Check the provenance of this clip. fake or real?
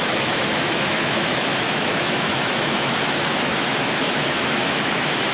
fake